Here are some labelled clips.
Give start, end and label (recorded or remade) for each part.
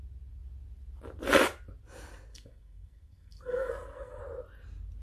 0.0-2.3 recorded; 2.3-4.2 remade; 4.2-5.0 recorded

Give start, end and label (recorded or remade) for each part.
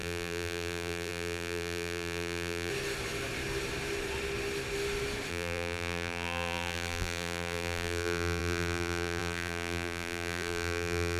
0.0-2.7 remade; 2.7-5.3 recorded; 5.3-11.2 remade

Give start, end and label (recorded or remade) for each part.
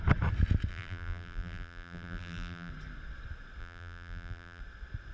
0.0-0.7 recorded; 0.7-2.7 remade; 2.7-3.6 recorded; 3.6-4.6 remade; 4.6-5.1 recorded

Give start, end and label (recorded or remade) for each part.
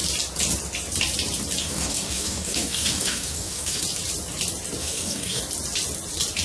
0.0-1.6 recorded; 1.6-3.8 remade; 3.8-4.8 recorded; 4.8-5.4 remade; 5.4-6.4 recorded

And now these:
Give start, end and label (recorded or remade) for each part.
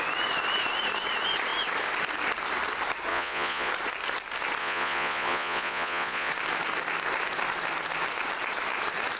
0.0-3.1 recorded; 3.1-3.7 remade; 3.7-4.6 recorded; 4.6-6.3 remade; 6.3-9.2 recorded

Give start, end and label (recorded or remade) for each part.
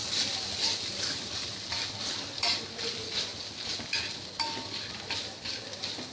0.0-3.3 remade; 3.3-5.6 recorded; 5.6-6.1 remade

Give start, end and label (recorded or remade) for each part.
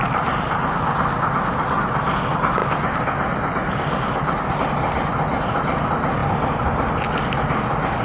0.0-8.0 recorded